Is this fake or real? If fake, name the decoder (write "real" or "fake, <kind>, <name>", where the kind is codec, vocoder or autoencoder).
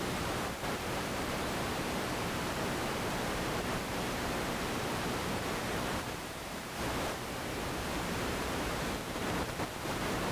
fake, vocoder, BigVGAN v2